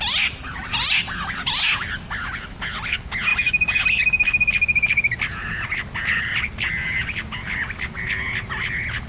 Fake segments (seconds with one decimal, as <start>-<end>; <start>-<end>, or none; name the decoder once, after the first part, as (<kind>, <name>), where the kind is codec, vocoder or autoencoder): none

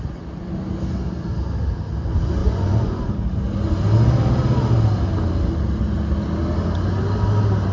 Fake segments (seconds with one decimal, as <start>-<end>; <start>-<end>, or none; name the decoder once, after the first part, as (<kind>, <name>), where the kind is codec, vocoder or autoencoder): 2.4-3.1 (vocoder, Vocos)

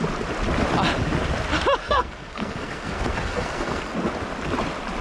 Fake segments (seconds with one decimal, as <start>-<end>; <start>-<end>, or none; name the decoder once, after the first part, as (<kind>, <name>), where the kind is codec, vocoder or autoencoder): 1.8-3.8 (codec, SNAC)

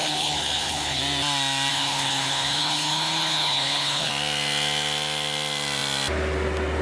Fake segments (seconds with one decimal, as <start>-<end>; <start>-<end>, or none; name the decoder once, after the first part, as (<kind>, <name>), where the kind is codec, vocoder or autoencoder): 0.0-1.0 (codec, HILCodec); 1.7-4.1

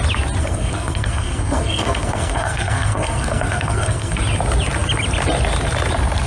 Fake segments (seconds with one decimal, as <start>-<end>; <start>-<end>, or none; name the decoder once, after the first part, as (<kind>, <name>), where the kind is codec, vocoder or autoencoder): 0.4-4.2 (codec, SNAC)